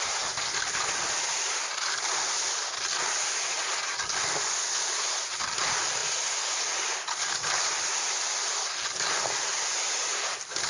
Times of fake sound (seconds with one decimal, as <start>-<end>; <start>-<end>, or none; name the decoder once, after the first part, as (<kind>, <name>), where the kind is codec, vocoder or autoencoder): none